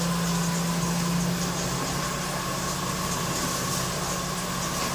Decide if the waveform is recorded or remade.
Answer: recorded